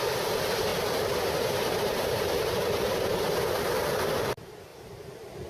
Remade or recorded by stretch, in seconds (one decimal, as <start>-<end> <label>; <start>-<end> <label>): 0.0-0.7 recorded; 0.7-4.0 remade; 4.0-4.7 recorded; 4.7-5.5 remade